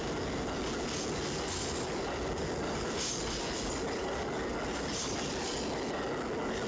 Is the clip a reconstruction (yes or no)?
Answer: no